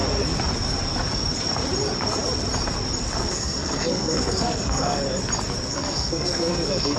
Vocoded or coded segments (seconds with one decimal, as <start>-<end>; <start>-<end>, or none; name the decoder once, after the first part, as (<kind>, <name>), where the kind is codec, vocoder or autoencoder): 3.2-5.0 (codec, SNAC); 5.7-7.0